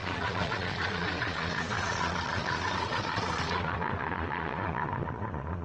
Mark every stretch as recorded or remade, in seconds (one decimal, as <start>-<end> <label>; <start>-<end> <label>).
0.0-5.6 remade